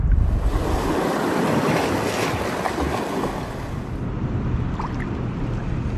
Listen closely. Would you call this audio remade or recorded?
recorded